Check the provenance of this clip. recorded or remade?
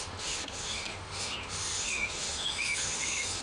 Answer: remade